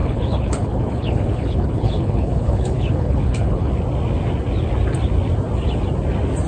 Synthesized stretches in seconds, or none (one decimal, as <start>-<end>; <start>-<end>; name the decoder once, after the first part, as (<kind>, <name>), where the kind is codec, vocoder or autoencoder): 0.0-3.7 (codec, HILCodec)